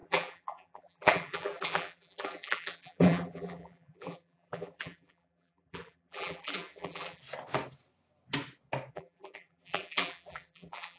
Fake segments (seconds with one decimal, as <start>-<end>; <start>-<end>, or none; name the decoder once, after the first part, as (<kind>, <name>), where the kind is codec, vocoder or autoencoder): 0.0-7.2 (vocoder, BigVGAN v2); 8.9-11.0